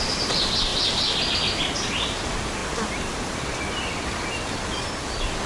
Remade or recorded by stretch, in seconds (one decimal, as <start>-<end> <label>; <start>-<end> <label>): 0.0-5.5 recorded